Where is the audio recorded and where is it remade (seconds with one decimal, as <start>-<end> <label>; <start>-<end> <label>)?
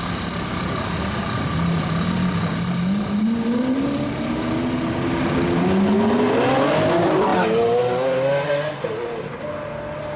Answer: 0.0-10.2 recorded